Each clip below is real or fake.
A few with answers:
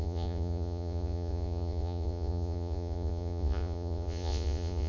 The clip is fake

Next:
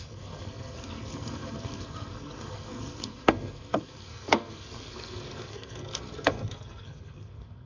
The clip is fake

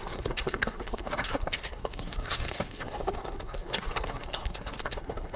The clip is fake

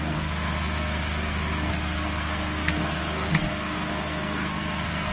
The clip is fake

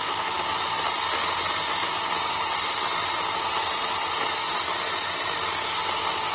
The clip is real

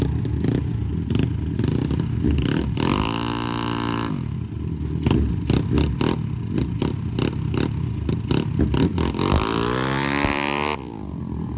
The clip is real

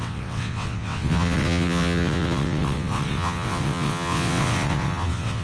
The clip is fake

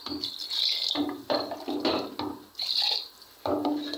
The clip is real